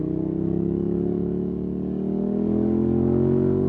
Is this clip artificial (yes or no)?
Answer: yes